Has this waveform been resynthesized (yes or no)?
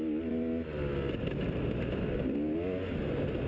no